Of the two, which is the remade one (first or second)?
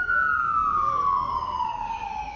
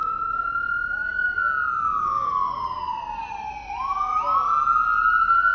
first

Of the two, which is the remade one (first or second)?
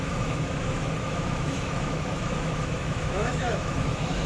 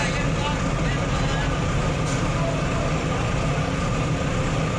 first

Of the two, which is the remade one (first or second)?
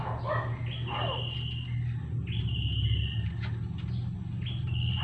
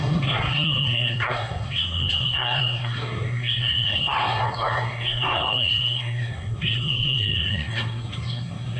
second